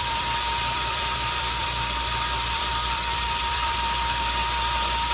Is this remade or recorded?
remade